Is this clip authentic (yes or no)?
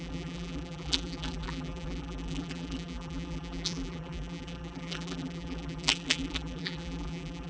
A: no